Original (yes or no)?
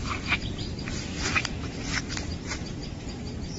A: no